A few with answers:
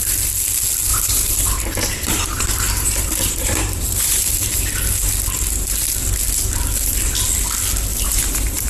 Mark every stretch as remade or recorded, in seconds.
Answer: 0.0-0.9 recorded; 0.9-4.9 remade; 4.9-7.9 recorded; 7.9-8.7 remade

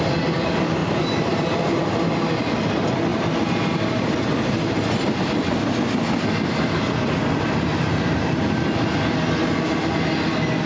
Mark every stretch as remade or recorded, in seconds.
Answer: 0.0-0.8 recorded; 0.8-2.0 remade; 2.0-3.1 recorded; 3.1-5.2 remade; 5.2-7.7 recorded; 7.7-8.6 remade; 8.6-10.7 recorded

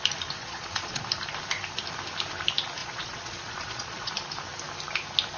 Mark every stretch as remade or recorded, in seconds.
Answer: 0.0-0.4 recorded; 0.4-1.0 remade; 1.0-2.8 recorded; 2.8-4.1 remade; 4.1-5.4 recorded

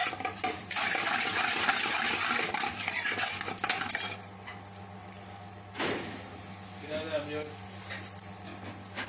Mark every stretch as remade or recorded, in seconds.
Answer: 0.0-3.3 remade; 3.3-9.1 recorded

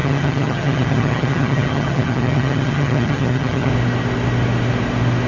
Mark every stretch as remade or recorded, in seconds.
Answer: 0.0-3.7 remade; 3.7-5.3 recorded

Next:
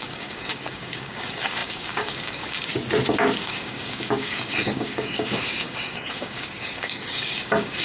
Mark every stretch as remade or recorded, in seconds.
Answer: 0.0-2.7 remade; 2.7-3.4 recorded; 3.4-7.8 remade